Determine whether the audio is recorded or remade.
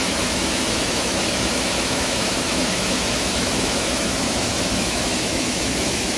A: remade